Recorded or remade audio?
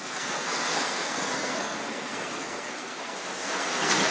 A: remade